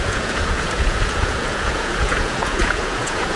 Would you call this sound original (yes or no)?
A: no